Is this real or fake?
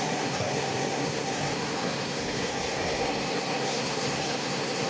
fake